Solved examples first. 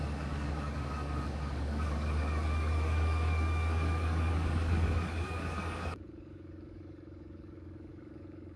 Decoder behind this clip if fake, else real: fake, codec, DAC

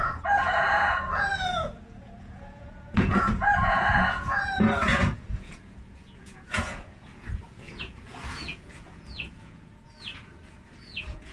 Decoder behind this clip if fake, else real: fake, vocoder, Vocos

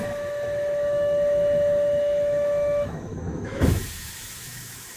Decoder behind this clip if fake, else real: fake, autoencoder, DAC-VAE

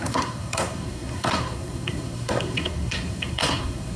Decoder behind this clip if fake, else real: fake, codec, SNAC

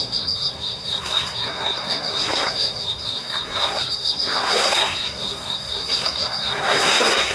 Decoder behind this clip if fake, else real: fake, codec, SNAC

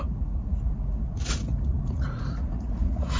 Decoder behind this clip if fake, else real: fake, vocoder, Vocos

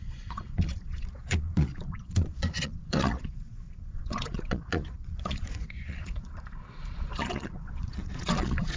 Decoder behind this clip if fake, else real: fake, vocoder, Vocos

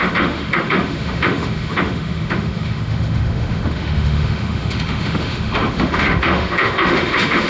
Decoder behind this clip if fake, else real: fake, autoencoder, DAC-VAE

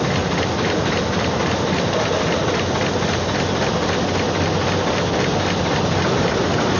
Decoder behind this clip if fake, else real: real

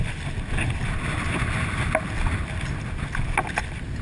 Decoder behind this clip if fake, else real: real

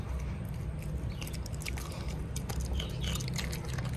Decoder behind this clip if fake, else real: real